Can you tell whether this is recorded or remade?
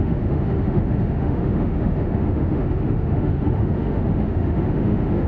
remade